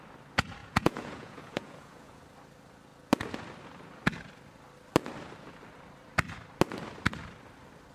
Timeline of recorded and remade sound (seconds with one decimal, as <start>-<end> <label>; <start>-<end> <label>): 0.0-0.6 recorded; 0.6-2.2 remade; 2.2-7.9 recorded